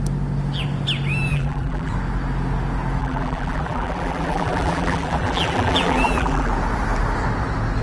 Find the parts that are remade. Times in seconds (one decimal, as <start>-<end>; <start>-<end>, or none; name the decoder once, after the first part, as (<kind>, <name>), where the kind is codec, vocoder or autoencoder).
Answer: 1.3-1.9 (vocoder, BigVGAN v2); 3.0-6.5